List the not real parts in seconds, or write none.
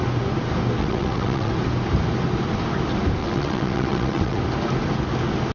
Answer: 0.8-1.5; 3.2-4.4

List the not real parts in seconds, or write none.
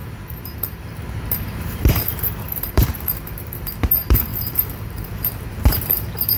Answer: 0.0-6.4